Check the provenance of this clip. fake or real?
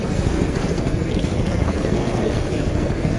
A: fake